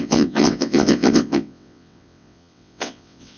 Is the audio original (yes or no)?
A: no